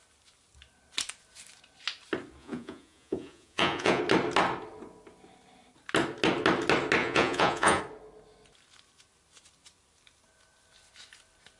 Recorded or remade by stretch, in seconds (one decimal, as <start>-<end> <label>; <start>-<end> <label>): 0.0-2.4 recorded; 2.4-4.0 remade; 4.0-7.0 recorded; 7.0-7.8 remade; 7.8-11.6 recorded